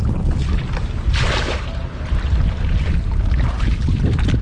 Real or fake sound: real